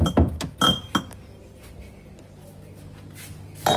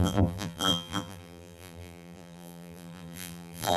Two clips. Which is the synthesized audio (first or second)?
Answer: second